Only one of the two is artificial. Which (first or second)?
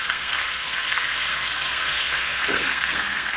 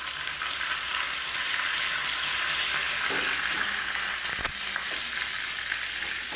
first